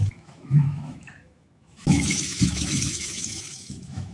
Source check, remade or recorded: remade